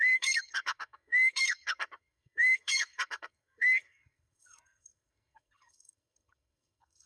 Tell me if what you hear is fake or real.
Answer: fake